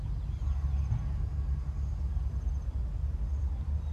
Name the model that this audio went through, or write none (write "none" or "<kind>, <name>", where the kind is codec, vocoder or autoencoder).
none